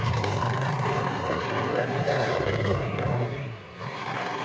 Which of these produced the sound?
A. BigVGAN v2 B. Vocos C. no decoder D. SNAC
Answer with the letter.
D